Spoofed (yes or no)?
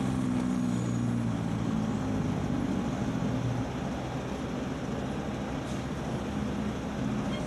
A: no